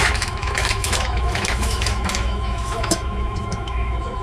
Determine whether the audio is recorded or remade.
remade